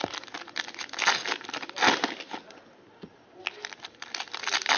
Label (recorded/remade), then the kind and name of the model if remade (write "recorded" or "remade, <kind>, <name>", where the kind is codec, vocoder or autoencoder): recorded